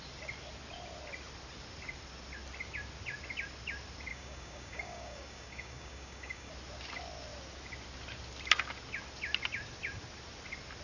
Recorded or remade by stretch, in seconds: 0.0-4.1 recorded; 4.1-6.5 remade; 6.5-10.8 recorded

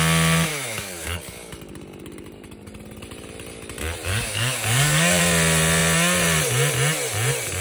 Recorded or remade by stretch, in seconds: 0.0-0.5 recorded; 0.5-1.5 remade; 1.5-4.1 recorded; 4.1-5.2 remade; 5.2-7.6 recorded

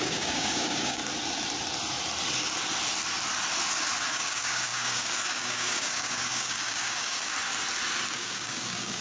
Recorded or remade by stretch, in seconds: 0.0-1.0 remade; 1.0-4.1 recorded; 4.1-7.3 remade; 7.3-8.1 recorded; 8.1-9.0 remade

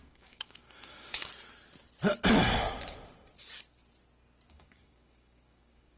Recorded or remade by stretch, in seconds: 0.0-1.3 remade; 1.3-4.5 recorded; 4.5-6.0 remade

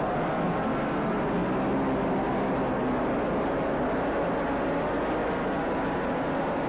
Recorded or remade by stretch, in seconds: 0.0-6.7 recorded

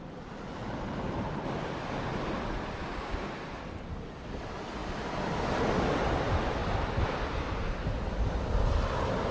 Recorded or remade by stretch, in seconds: 0.0-2.8 recorded; 2.8-3.3 remade; 3.3-9.3 recorded

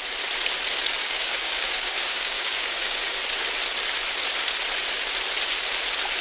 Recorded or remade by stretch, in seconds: 0.0-1.0 recorded; 1.0-3.2 remade; 3.2-6.2 recorded